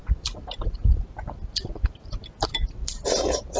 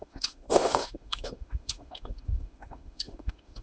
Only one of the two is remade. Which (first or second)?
second